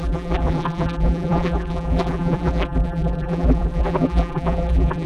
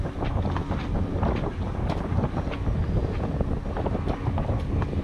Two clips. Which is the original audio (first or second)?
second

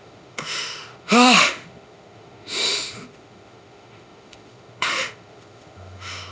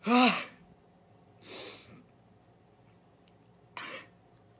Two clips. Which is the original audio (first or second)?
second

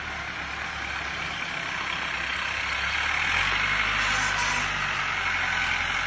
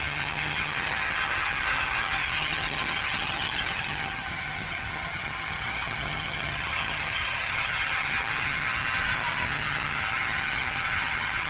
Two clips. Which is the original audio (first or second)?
first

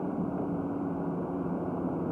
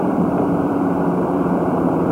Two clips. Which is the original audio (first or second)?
first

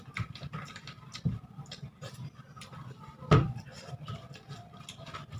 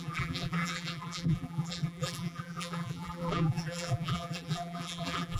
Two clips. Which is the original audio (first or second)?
first